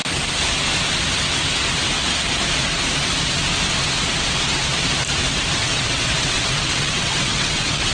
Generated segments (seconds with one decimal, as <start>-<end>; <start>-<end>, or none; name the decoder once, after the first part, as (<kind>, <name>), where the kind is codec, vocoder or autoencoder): 5.6-7.9 (vocoder, WaveNeXt)